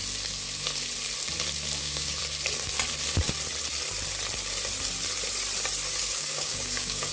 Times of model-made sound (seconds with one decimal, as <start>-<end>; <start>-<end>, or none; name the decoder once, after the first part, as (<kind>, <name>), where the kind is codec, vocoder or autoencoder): 1.8-2.2 (codec, DAC); 6.0-7.1